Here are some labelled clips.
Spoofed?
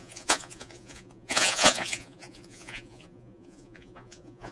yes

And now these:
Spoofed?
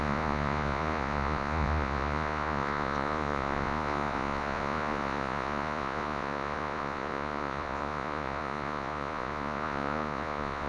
yes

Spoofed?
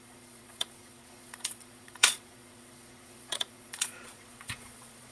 yes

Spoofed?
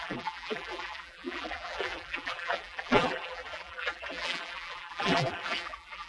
yes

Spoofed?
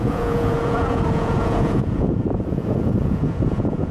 yes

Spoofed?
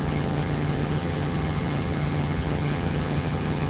yes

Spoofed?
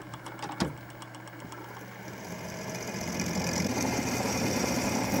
no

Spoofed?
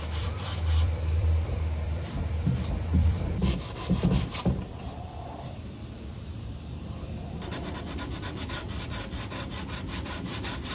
yes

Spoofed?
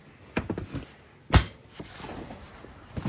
no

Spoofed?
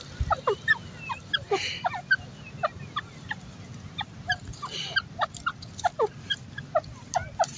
no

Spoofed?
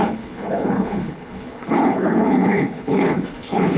yes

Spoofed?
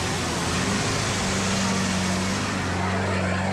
no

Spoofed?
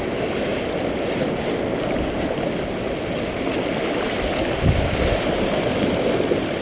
no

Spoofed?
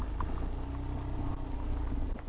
no